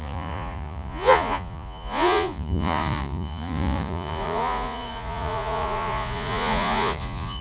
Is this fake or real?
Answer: fake